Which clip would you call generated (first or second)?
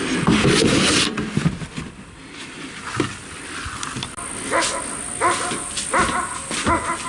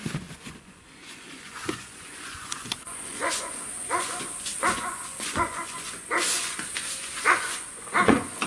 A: second